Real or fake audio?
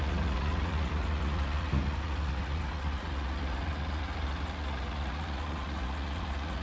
fake